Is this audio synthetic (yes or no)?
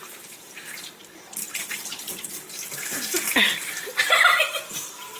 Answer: yes